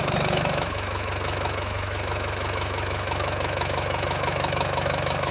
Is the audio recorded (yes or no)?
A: no